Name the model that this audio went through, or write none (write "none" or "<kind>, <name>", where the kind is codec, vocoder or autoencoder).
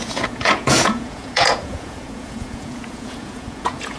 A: vocoder, Vocos